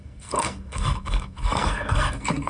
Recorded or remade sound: remade